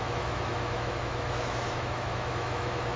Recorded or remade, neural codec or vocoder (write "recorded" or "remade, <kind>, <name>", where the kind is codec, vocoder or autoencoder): remade, autoencoder, DAC-VAE